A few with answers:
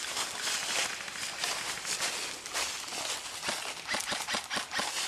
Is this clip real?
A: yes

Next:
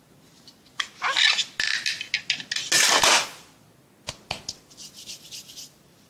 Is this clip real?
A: yes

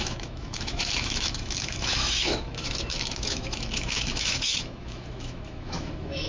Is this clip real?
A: no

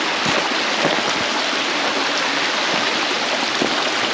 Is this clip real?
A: yes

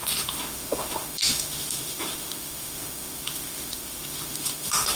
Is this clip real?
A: no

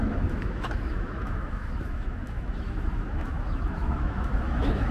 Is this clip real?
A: no